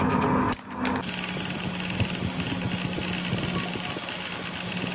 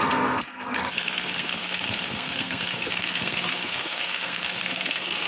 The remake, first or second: second